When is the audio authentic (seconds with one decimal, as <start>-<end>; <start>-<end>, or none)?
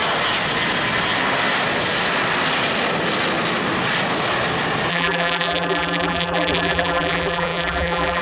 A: 0.0-4.9